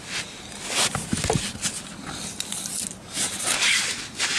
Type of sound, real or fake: real